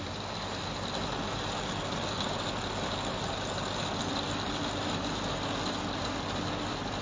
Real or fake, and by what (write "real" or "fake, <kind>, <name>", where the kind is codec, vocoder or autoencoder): real